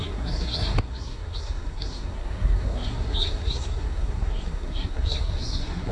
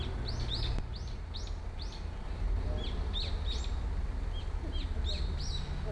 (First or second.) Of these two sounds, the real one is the second